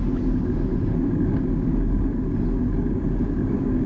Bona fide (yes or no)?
yes